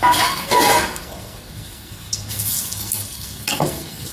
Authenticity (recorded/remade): remade